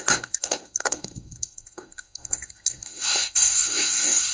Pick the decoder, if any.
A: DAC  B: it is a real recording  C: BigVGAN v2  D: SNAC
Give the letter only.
D